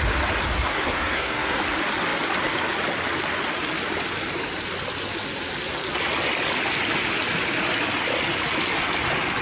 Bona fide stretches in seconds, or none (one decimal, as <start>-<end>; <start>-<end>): 0.0-0.5; 1.6-9.4